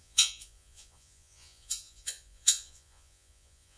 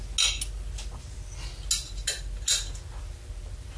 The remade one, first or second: first